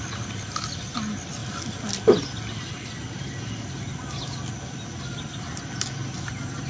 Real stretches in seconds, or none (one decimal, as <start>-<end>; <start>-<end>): 0.0-6.7